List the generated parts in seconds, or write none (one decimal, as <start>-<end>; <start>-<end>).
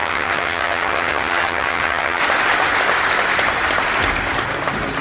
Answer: 0.0-2.2